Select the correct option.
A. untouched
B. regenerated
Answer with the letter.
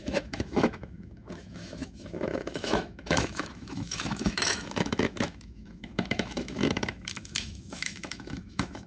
B